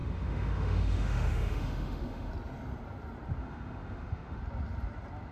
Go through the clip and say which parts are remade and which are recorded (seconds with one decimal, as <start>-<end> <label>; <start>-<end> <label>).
0.0-2.3 remade; 2.3-3.4 recorded; 3.4-4.4 remade; 4.4-5.3 recorded